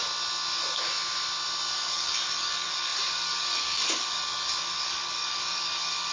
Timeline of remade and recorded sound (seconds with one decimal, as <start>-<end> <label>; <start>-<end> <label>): 0.0-1.7 recorded; 1.7-6.1 remade